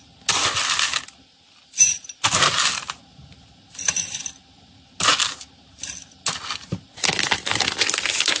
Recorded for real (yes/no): yes